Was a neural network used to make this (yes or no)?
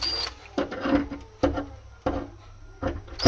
no